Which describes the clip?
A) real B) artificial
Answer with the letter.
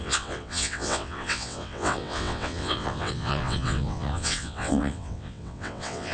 B